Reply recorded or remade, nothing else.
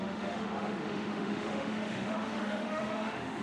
remade